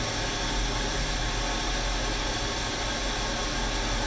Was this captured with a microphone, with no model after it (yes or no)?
yes